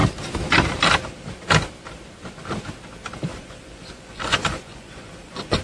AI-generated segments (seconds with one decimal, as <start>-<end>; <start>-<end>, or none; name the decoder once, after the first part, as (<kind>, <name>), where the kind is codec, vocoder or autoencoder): 3.3-5.6 (vocoder, Vocos)